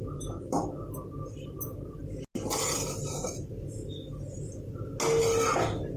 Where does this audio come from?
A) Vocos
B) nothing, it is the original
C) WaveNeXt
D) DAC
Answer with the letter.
B